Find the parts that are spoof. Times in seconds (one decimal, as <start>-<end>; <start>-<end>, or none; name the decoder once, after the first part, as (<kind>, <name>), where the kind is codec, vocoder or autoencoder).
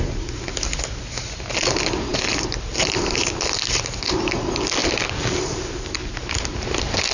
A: 2.1-2.8 (vocoder, BigVGAN v2)